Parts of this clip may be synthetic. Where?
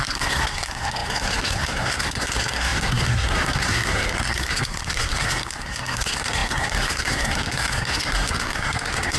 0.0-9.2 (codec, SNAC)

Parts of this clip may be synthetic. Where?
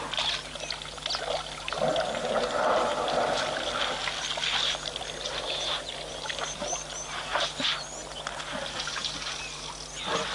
none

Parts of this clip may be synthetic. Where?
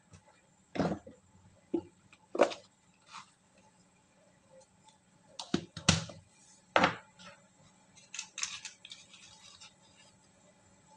none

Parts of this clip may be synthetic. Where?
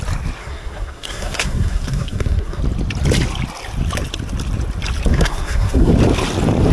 0.4-2.6 (codec, SNAC); 5.1-5.9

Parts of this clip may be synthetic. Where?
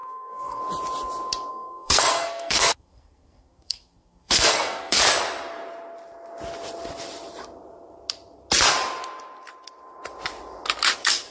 0.0-0.6 (codec, SNAC); 1.5-5.0